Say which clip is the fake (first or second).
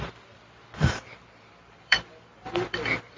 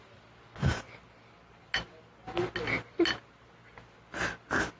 first